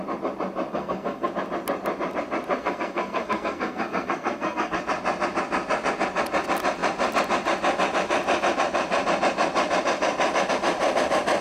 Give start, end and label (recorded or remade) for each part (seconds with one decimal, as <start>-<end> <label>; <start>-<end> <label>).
0.0-0.7 recorded; 0.7-1.3 remade; 1.3-2.5 recorded; 2.5-4.8 remade; 4.8-11.4 recorded